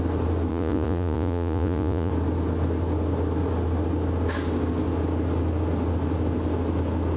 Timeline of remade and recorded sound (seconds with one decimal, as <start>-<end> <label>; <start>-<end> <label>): 0.0-0.5 recorded; 0.5-2.1 remade; 2.1-7.2 recorded

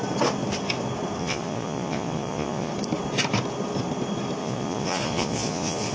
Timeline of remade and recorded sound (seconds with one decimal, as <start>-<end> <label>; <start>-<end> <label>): 0.0-1.2 recorded; 1.2-2.7 remade; 2.7-4.4 recorded; 4.4-5.9 remade